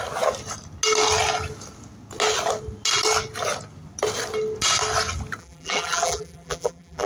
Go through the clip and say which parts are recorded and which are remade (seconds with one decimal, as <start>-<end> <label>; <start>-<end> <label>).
0.0-5.4 recorded; 5.4-7.1 remade